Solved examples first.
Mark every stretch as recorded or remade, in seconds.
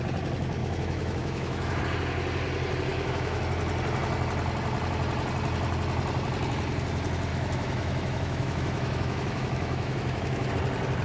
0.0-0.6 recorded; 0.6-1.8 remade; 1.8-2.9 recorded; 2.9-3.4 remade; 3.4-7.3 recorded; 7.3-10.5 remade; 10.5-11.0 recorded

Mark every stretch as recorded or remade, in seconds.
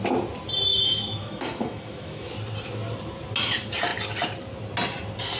0.0-0.7 recorded; 0.7-2.3 remade; 2.3-5.4 recorded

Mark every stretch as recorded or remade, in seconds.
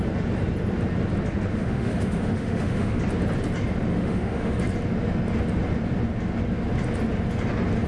0.0-1.5 recorded; 1.5-3.0 remade; 3.0-3.9 recorded; 3.9-4.6 remade; 4.6-7.9 recorded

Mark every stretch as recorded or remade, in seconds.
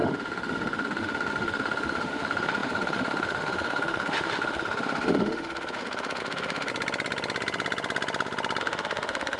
0.0-6.7 remade; 6.7-8.6 recorded; 8.6-9.4 remade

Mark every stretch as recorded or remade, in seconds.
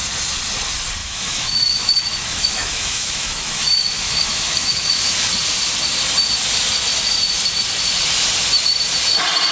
0.0-1.0 recorded; 1.0-5.0 remade; 5.0-9.5 recorded